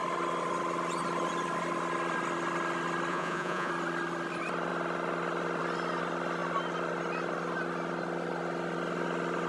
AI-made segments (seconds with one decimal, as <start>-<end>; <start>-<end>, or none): 3.1-3.7